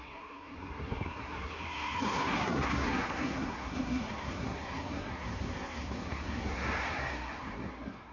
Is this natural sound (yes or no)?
no